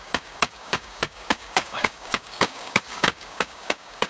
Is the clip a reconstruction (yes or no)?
yes